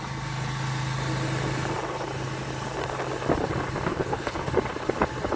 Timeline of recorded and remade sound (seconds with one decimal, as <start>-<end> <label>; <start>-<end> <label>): 0.0-3.9 recorded; 3.9-4.5 remade; 4.5-5.4 recorded